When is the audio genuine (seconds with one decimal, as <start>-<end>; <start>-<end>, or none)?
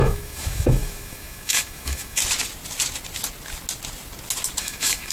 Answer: 2.2-4.6